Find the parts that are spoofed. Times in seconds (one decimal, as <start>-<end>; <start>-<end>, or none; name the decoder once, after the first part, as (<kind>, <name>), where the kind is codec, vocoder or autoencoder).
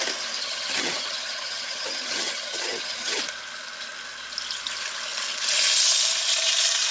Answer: 0.4-3.2 (vocoder, HiFi-GAN)